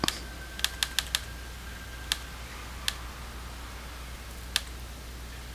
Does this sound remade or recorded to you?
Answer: recorded